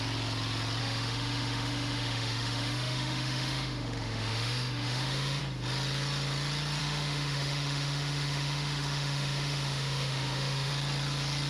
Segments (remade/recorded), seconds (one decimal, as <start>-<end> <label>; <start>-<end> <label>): 0.0-0.8 recorded; 0.8-5.4 remade; 5.4-6.8 recorded; 6.8-10.7 remade; 10.7-11.5 recorded